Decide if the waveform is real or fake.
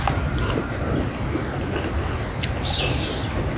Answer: real